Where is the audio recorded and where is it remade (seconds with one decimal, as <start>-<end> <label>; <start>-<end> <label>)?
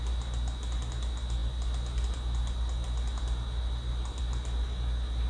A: 0.0-5.3 recorded